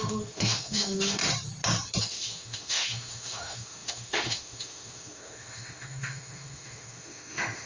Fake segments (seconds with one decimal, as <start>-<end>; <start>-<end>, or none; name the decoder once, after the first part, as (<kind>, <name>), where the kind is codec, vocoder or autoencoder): 0.0-1.2 (autoencoder, DAC-VAE); 2.0-7.7